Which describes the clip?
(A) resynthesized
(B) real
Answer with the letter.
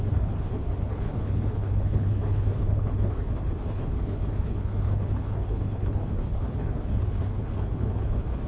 A